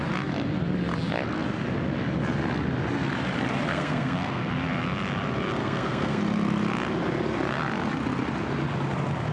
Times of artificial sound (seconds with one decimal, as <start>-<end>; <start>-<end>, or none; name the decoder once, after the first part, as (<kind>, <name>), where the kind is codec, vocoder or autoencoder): 3.7-4.5 (codec, SNAC); 5.6-6.2